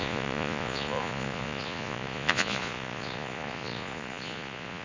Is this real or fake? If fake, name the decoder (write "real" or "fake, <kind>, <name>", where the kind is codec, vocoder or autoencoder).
fake, vocoder, Vocos